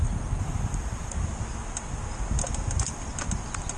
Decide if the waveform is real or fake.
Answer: real